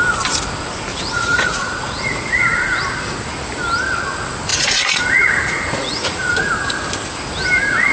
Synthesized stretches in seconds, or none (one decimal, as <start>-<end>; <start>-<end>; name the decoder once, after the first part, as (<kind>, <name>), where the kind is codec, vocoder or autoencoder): 0.9-2.8 (vocoder, Vocos); 4.5-6.5